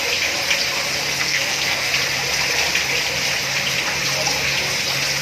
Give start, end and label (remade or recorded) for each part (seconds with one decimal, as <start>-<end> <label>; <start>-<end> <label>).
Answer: 0.0-1.2 recorded; 1.2-1.9 remade; 1.9-5.2 recorded

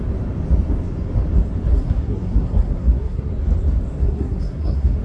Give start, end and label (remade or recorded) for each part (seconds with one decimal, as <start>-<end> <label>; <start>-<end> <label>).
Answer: 0.0-1.7 recorded; 1.7-3.3 remade; 3.3-4.0 recorded; 4.0-5.0 remade